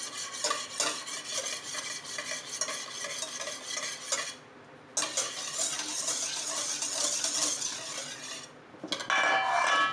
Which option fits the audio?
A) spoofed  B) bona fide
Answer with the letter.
B